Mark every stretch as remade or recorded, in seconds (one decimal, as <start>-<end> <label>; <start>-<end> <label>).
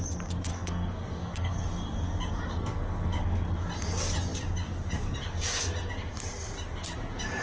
0.0-0.5 recorded; 0.5-1.5 remade; 1.5-2.5 recorded; 2.5-3.2 remade; 3.2-7.4 recorded